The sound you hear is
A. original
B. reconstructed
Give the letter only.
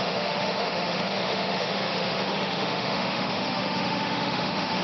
B